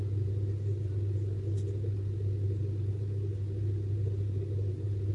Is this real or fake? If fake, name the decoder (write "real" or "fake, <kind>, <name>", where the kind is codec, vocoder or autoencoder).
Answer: real